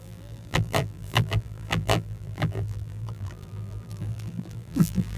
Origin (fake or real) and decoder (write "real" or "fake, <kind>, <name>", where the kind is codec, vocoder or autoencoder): fake, vocoder, BigVGAN v2